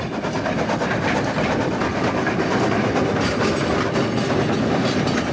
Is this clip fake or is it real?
real